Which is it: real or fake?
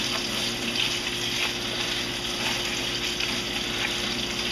real